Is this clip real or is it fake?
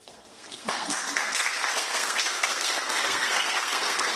fake